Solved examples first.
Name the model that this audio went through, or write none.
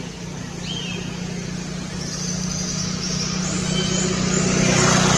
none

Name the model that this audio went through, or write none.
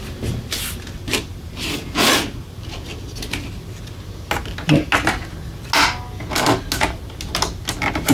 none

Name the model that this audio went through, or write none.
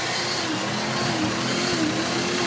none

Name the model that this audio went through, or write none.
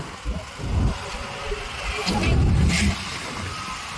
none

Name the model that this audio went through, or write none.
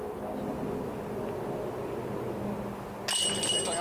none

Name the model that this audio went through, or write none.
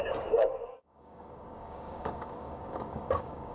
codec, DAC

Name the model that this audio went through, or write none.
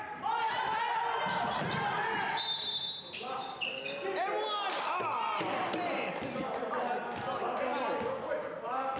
none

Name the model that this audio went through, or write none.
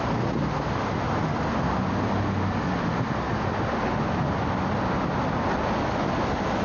none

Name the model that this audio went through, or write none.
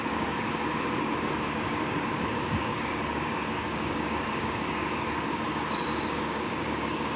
codec, DAC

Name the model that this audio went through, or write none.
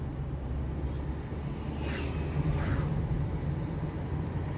none